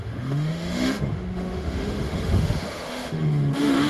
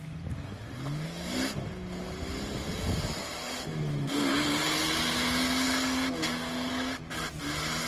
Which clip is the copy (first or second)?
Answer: first